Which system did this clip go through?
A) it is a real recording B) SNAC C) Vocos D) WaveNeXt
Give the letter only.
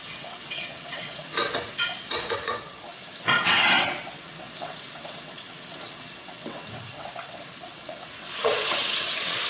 D